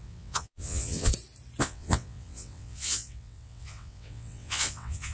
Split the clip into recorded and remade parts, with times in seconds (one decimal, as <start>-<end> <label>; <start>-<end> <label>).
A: 0.0-1.1 remade; 1.1-1.6 recorded; 1.6-5.1 remade